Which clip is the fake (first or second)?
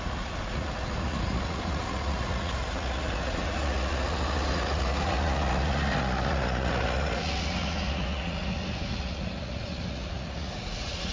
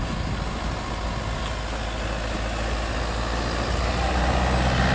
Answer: first